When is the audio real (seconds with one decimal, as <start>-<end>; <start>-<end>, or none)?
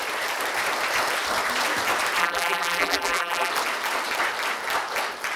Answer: 0.0-2.2; 3.5-5.4